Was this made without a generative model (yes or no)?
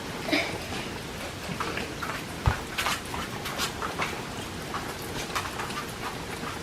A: yes